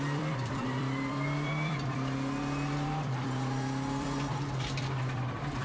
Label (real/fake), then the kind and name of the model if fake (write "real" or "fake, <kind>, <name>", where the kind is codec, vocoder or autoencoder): fake, vocoder, BigVGAN v2